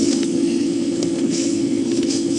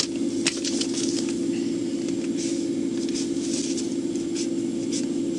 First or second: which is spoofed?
first